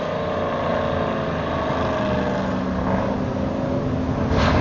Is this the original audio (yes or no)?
yes